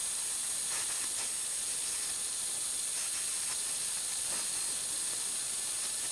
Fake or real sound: real